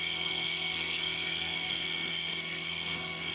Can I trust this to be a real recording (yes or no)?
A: no